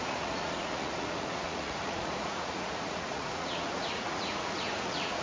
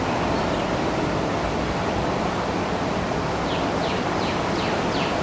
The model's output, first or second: first